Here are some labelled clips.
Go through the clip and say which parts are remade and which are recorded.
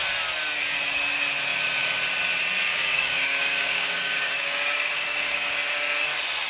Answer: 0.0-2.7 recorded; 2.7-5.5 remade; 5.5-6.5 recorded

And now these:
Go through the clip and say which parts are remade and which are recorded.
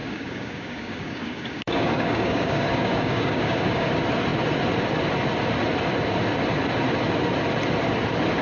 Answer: 0.0-3.9 remade; 3.9-8.4 recorded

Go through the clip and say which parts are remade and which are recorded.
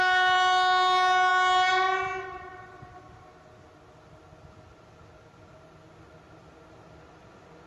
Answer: 0.0-7.7 recorded